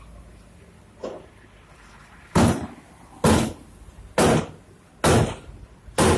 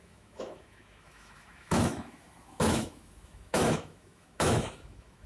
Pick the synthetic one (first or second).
second